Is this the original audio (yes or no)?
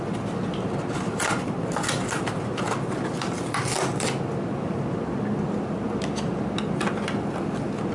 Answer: yes